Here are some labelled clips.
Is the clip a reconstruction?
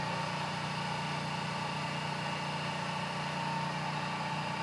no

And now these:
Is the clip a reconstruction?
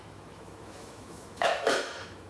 yes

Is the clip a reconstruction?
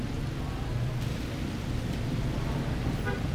no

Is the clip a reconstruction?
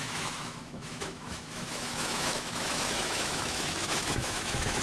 yes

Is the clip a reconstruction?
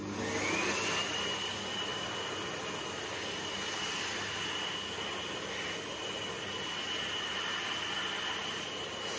no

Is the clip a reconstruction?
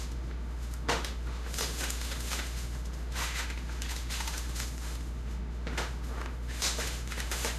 yes